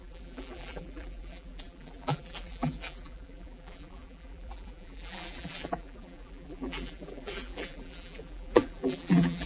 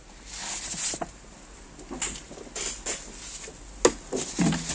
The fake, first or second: first